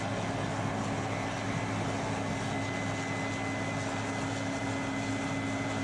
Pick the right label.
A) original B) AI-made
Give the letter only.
A